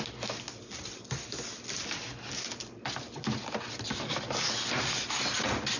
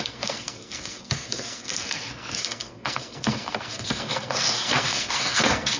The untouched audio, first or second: first